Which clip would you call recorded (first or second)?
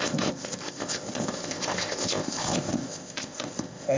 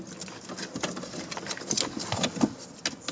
second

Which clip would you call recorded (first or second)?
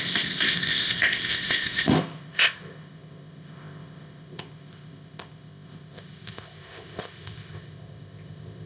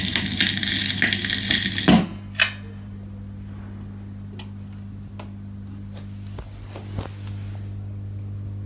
second